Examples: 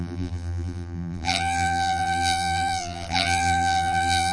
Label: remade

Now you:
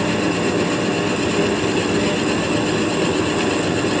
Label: recorded